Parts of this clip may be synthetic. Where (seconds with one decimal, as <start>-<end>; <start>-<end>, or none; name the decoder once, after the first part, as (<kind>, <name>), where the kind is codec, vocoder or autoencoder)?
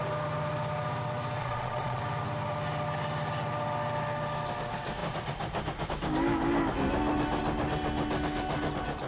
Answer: 1.4-2.0 (vocoder, Vocos)